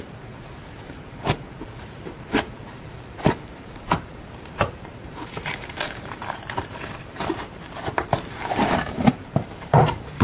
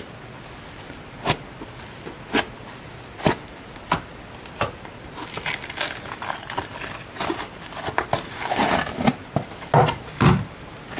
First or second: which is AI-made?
first